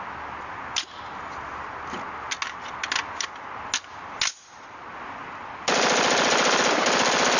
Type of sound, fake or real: real